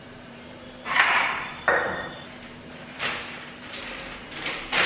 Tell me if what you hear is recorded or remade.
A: remade